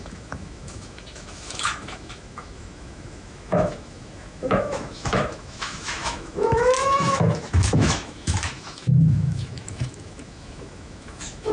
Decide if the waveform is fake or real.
fake